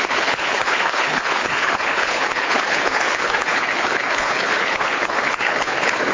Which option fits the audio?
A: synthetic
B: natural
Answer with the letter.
A